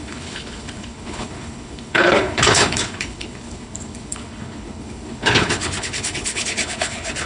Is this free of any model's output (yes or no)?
no